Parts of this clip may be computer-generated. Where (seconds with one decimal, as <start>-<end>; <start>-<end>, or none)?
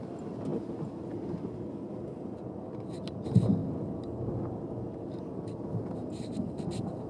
none